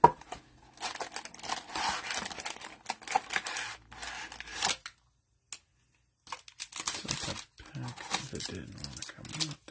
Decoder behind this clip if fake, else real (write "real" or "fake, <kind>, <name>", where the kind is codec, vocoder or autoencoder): real